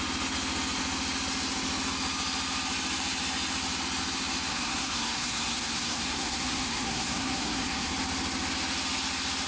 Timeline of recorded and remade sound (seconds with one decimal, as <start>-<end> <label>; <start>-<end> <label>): 0.0-4.5 recorded; 4.5-7.9 remade; 7.9-9.5 recorded